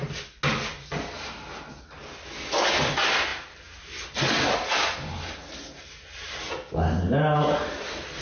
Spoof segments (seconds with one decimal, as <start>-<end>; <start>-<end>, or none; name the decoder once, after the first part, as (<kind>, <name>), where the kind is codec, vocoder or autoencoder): none